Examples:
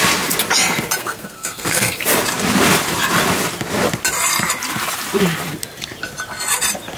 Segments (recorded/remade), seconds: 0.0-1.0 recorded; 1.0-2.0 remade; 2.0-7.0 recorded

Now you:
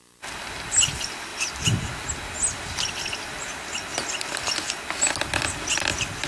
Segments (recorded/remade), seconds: 0.0-6.3 recorded

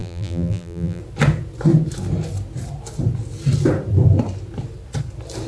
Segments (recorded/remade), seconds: 0.0-1.0 remade; 1.0-5.5 recorded

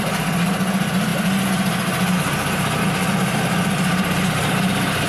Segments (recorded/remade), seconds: 0.0-5.1 recorded

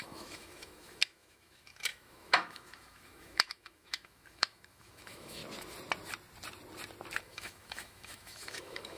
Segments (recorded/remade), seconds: 0.0-5.4 remade; 5.4-7.2 recorded; 7.2-9.0 remade

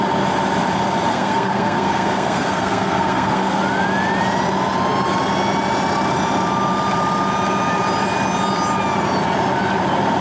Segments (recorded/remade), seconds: 0.0-1.1 recorded; 1.1-3.6 remade; 3.6-10.2 recorded

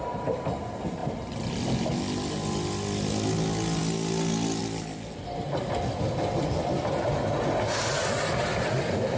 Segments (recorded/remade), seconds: 0.0-9.2 recorded

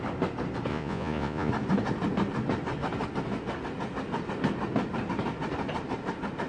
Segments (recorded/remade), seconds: 0.0-0.7 recorded; 0.7-1.5 remade; 1.5-6.5 recorded